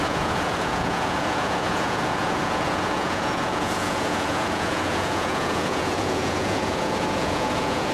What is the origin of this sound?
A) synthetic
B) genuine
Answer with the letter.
A